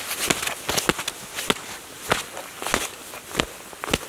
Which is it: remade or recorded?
recorded